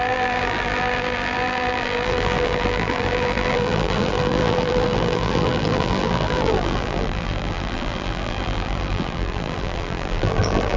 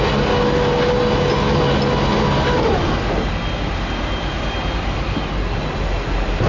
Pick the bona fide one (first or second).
second